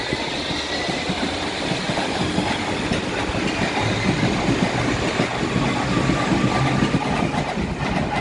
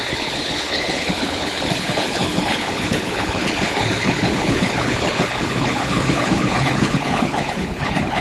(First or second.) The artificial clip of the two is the second